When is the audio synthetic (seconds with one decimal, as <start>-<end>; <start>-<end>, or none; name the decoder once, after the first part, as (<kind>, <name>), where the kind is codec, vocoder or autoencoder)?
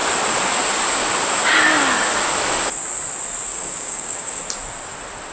3.5-4.4 (codec, DAC)